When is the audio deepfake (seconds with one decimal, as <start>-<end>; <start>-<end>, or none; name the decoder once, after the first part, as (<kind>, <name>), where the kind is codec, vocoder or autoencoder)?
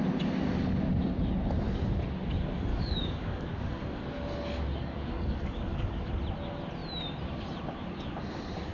2.7-3.7 (codec, DAC); 4.8-6.1